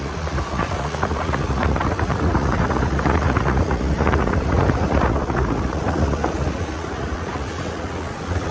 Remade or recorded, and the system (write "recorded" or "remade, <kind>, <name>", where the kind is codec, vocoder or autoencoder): remade, vocoder, Vocos